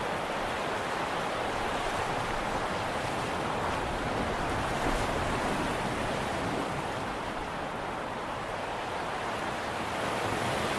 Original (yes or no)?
yes